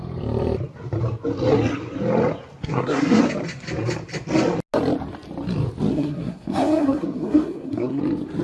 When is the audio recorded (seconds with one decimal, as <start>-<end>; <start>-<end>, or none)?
0.0-2.6; 3.2-5.9; 8.0-8.4